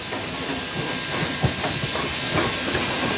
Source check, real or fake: real